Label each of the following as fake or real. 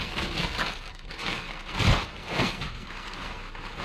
fake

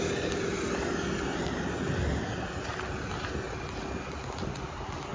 real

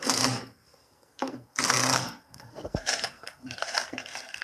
fake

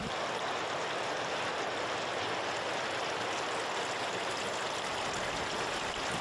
real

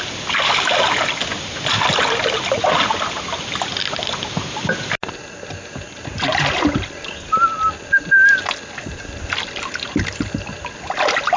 real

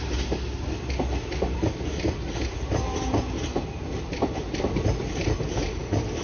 real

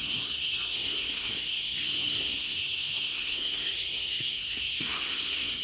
fake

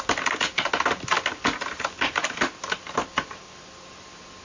real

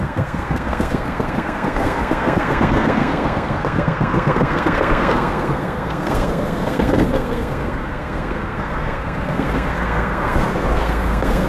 fake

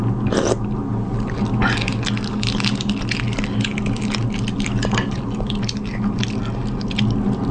real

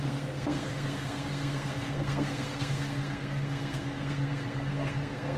fake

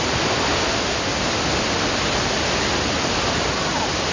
real